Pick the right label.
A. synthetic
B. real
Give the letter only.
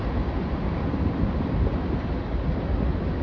B